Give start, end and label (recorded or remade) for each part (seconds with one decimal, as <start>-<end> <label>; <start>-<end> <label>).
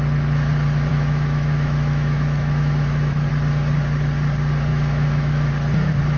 0.0-0.9 recorded; 0.9-3.3 remade; 3.3-4.7 recorded; 4.7-5.5 remade; 5.5-6.2 recorded